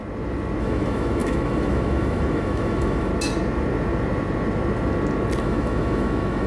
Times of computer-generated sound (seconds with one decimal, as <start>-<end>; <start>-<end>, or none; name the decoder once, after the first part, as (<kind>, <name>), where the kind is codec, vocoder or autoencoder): 0.6-3.1 (autoencoder, DAC-VAE); 5.4-6.5